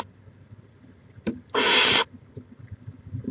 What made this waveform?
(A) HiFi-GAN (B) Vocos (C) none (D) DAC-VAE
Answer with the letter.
C